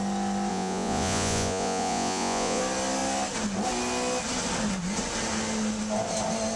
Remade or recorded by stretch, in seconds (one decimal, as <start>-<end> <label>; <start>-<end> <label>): 0.0-0.5 recorded; 0.5-2.6 remade; 2.6-6.6 recorded